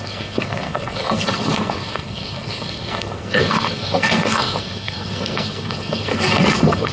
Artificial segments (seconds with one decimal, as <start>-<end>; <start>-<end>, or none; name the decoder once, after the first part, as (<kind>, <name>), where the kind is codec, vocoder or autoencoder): 0.0-6.9 (codec, SNAC)